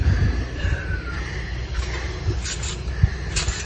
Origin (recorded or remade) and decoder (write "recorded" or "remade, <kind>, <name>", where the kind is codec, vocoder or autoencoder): recorded